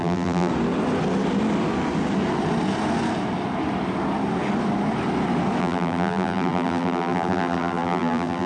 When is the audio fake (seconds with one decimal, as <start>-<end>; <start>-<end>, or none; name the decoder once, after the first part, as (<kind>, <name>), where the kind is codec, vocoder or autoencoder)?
0.0-0.5 (vocoder, BigVGAN v2); 5.6-8.5

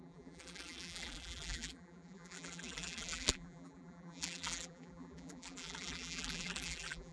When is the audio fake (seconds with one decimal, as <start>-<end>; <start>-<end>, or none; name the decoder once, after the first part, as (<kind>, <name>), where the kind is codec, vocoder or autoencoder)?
0.0-7.1 (vocoder, BigVGAN v2)

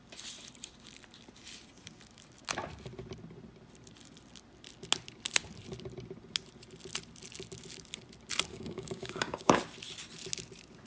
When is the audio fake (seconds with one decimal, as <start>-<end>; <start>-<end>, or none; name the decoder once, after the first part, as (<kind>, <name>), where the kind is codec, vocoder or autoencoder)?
8.5-9.6 (codec, DAC)

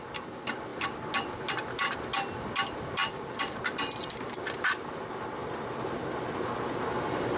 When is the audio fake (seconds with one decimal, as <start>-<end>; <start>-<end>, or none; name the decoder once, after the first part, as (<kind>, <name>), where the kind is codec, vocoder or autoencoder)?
none

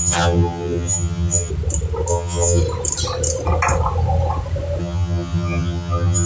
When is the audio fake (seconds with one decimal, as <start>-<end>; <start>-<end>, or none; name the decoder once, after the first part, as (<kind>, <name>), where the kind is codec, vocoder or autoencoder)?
0.0-1.5 (vocoder, HiFi-GAN); 2.1-2.6; 4.8-6.3

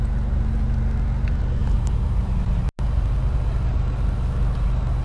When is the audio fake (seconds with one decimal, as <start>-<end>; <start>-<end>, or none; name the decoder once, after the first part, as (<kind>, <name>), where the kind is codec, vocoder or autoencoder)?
1.6-2.6 (vocoder, BigVGAN v2)